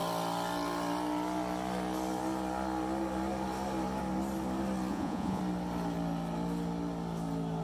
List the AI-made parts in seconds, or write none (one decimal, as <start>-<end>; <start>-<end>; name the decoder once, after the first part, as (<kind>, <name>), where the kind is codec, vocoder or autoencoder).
4.9-5.4 (vocoder, Vocos)